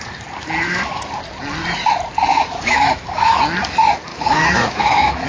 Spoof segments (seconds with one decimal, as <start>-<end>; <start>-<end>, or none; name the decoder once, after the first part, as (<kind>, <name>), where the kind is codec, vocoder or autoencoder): 0.4-1.0 (autoencoder, DAC-VAE); 2.3-3.4; 4.1-5.3